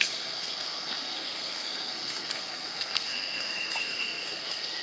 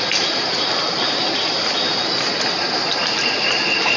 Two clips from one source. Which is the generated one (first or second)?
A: first